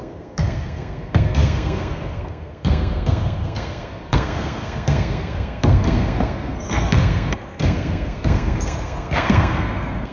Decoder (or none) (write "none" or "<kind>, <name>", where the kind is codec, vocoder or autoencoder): codec, SNAC